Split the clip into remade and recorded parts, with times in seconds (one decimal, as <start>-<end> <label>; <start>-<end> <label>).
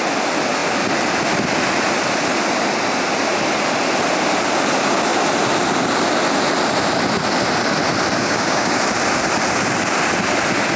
0.0-8.2 recorded; 8.2-8.8 remade; 8.8-10.8 recorded